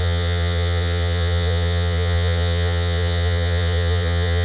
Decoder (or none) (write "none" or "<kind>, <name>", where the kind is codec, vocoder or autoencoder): vocoder, Vocos